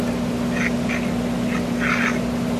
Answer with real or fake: real